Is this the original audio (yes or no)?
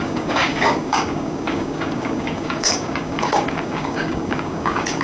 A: no